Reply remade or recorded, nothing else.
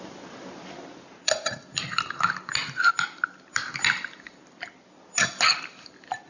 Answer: recorded